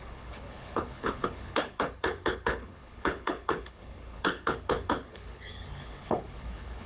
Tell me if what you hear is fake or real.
fake